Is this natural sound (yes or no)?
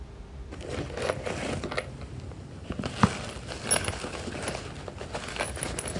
yes